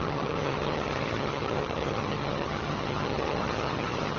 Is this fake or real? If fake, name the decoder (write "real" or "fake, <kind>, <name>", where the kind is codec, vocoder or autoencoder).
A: fake, vocoder, HiFi-GAN